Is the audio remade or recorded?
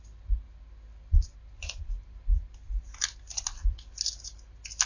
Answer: recorded